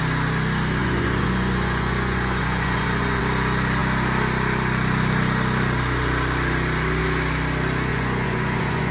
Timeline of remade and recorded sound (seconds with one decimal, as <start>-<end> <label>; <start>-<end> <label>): 0.0-0.8 recorded; 0.8-3.2 remade; 3.2-7.9 recorded; 7.9-8.9 remade